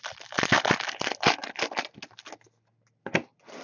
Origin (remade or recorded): recorded